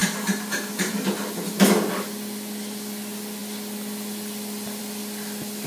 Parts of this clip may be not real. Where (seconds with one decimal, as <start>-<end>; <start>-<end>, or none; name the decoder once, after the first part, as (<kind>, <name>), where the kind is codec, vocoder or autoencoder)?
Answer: 0.0-0.9 (vocoder, BigVGAN v2)